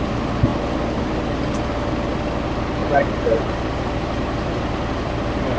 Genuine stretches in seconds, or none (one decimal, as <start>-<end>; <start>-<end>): 0.0-2.8; 5.1-5.6